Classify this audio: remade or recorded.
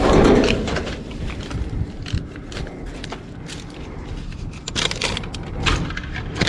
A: recorded